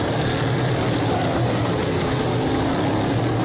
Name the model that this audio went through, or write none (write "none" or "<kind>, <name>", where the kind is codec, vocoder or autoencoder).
none